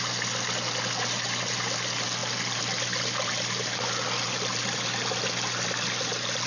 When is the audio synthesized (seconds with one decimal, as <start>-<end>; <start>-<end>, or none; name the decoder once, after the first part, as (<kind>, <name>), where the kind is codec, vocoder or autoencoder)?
none